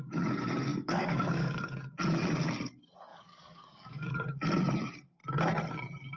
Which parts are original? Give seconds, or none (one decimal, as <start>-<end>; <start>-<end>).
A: 0.0-0.7; 1.6-3.1; 4.1-6.2